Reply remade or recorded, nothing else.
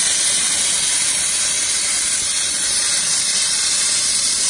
recorded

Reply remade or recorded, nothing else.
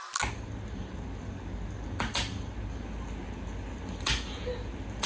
recorded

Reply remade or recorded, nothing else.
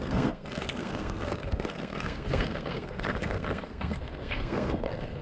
remade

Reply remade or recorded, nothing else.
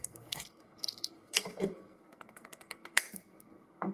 remade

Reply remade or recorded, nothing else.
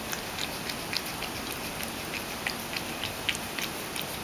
recorded